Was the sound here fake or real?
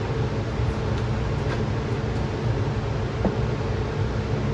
real